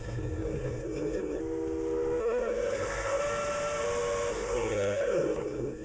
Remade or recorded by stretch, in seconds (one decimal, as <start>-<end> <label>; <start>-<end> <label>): 0.0-1.4 remade; 1.4-2.2 recorded; 2.2-3.2 remade; 3.2-4.3 recorded; 4.3-5.8 remade